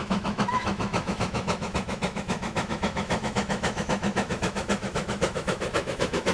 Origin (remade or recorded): remade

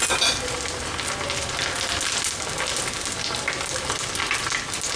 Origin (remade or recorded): recorded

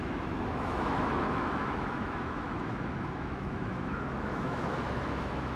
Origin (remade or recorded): remade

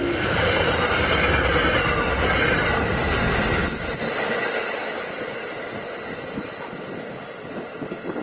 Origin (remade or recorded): recorded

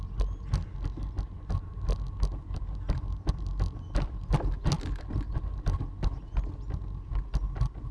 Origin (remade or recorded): recorded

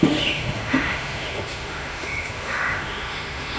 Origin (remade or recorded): remade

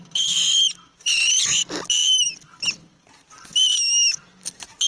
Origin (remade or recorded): recorded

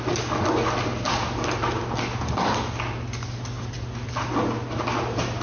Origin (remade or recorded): recorded